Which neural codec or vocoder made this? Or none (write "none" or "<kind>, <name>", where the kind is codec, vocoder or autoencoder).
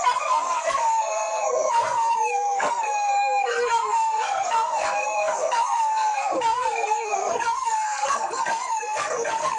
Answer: codec, SNAC